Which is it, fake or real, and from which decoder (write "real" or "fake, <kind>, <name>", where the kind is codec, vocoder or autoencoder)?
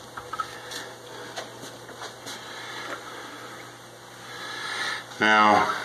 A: real